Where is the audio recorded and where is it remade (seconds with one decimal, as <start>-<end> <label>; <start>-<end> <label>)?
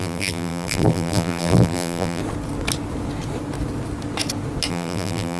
0.0-2.2 remade; 2.2-4.7 recorded; 4.7-5.4 remade